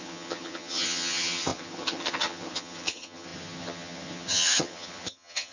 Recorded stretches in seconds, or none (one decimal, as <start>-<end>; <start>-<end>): none